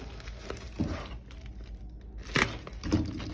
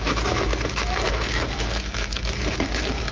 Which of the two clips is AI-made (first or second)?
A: second